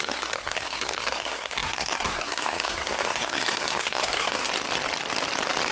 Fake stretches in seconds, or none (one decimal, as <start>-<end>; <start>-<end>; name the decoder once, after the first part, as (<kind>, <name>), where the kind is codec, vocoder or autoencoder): 0.0-4.5 (codec, SNAC)